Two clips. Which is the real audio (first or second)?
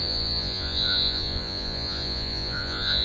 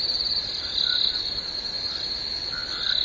second